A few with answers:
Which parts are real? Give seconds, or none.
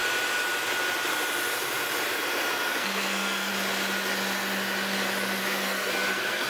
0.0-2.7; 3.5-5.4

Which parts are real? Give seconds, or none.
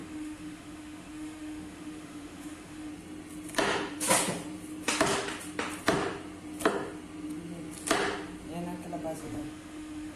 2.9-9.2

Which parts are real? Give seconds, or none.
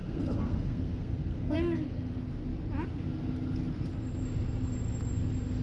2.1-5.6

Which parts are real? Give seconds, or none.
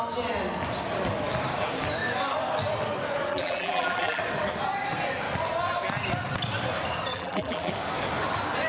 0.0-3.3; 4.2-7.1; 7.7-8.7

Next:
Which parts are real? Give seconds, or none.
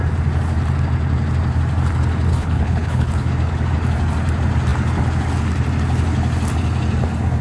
0.0-2.3; 3.3-7.4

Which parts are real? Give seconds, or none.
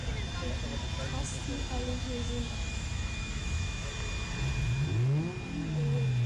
0.0-2.2; 3.9-6.3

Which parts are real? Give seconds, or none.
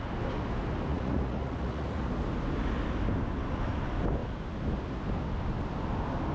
0.0-0.9; 2.1-6.3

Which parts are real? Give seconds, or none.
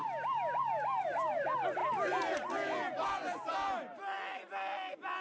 0.0-5.2